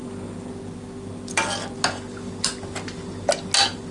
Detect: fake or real real